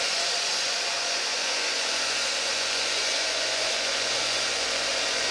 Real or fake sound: fake